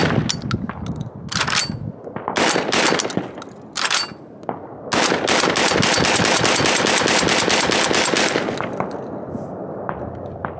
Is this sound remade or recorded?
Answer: recorded